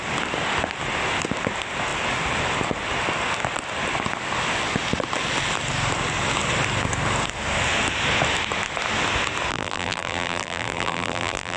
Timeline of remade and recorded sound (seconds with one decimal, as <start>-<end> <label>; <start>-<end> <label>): 0.0-9.5 recorded; 9.5-11.6 remade